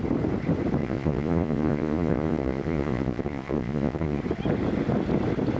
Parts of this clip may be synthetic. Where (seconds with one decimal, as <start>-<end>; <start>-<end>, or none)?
0.8-4.2